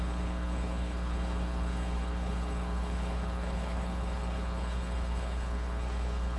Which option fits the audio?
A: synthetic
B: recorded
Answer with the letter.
A